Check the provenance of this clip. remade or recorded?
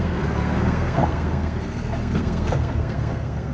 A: remade